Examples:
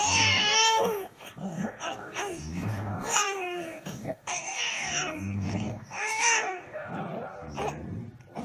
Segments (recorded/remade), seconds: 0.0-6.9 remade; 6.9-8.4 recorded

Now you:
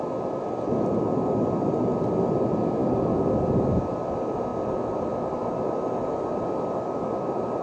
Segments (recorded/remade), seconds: 0.0-7.6 recorded